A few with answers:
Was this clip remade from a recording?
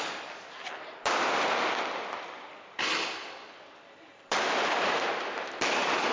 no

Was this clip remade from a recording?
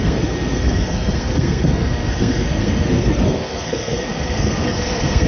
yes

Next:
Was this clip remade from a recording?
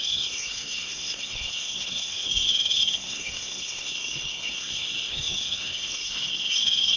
yes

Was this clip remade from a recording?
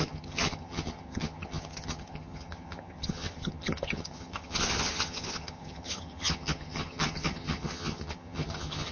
yes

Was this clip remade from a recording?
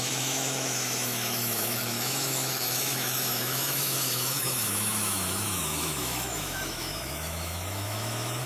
yes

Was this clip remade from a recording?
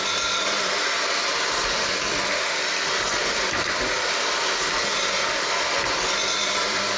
yes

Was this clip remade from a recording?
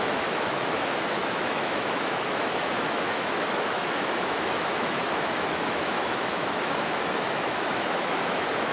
yes